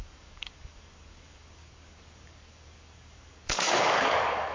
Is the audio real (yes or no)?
no